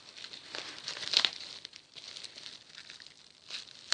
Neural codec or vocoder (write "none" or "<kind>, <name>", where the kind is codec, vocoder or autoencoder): vocoder, BigVGAN v2